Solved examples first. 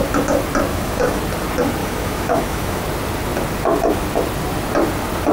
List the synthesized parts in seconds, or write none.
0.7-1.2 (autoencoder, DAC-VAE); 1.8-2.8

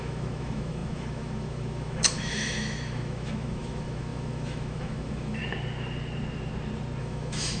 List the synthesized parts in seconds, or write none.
0.0-5.4 (autoencoder, DAC-VAE); 7.0-7.6

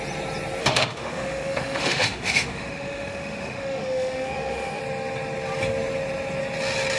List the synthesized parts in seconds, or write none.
0.6-4.8 (autoencoder, DAC-VAE)